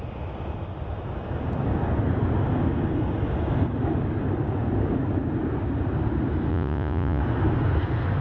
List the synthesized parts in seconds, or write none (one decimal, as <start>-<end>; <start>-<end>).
6.5-7.2